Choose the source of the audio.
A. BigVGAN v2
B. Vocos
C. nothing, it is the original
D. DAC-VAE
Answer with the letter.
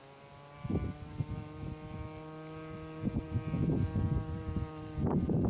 C